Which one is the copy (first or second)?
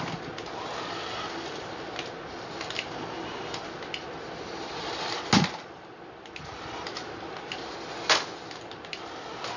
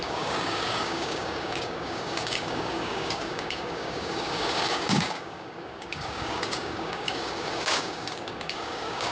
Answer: second